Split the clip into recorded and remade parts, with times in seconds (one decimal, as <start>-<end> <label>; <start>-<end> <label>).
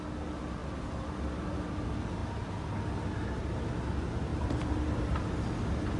0.0-2.2 recorded; 2.2-2.8 remade; 2.8-4.3 recorded; 4.3-5.2 remade; 5.2-6.0 recorded